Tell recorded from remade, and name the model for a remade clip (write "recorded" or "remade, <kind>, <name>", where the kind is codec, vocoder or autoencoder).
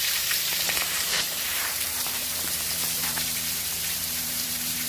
remade, vocoder, BigVGAN v2